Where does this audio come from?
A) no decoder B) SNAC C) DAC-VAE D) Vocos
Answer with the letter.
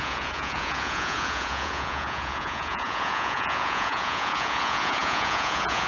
D